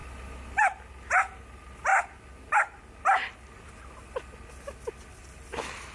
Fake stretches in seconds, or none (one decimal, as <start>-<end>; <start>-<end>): none